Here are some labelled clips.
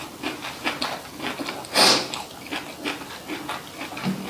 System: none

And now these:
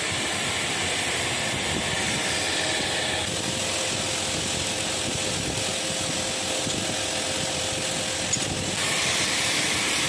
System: none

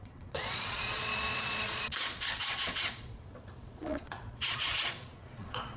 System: vocoder, Vocos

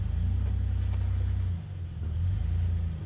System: none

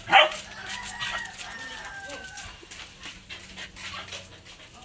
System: none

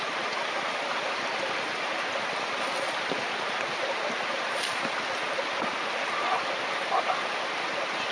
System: none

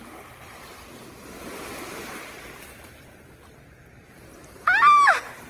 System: none